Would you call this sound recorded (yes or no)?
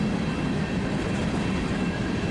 yes